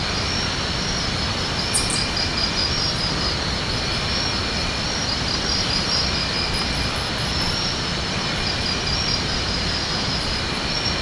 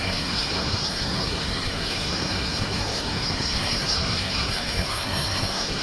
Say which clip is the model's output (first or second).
second